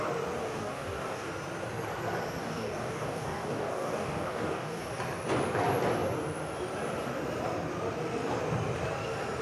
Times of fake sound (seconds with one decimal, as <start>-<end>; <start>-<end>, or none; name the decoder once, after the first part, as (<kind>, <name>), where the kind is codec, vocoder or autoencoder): 0.4-1.3 (codec, DAC); 2.4-4.8